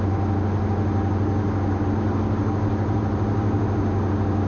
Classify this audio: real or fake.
real